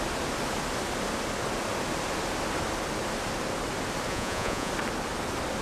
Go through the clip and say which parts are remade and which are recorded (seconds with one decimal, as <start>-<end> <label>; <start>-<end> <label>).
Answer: 0.0-4.1 recorded; 4.1-4.7 remade; 4.7-5.6 recorded